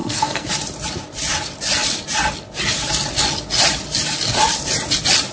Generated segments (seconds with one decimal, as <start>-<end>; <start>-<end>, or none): 0.0-0.5